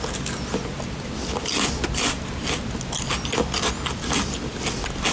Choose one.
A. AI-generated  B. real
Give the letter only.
B